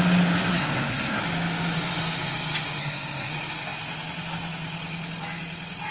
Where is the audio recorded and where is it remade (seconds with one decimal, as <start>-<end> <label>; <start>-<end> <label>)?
0.0-0.5 recorded; 0.5-1.2 remade; 1.2-2.8 recorded; 2.8-3.3 remade; 3.3-5.9 recorded